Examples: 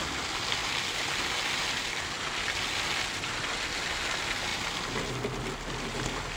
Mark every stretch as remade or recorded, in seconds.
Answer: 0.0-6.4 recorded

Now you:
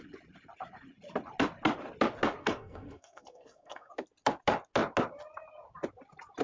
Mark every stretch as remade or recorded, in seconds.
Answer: 0.0-2.4 recorded; 2.4-3.9 remade; 3.9-6.4 recorded

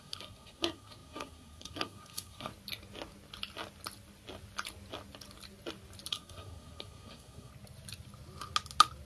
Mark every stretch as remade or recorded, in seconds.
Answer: 0.0-2.5 remade; 2.5-6.1 recorded; 6.1-7.5 remade; 7.5-9.1 recorded